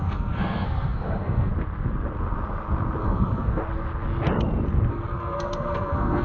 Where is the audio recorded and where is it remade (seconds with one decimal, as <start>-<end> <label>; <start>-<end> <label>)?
0.0-1.5 remade; 1.5-3.0 recorded; 3.0-3.6 remade; 3.6-4.9 recorded; 4.9-6.2 remade